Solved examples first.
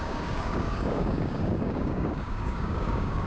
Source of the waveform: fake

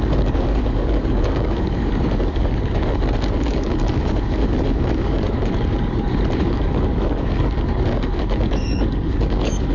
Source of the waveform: fake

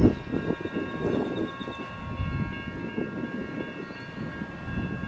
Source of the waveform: real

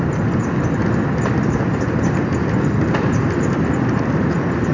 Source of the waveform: real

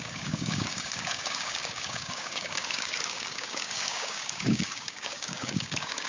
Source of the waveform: fake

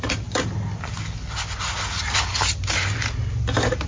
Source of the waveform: real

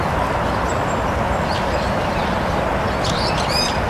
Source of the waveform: real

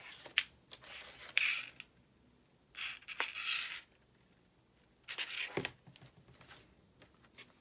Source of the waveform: real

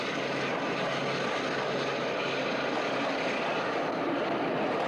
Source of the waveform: real